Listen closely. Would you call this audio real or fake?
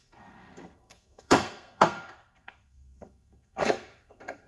fake